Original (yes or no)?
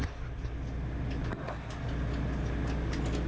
yes